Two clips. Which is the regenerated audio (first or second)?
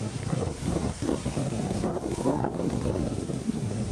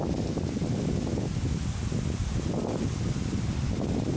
first